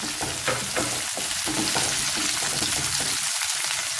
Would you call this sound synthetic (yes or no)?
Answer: no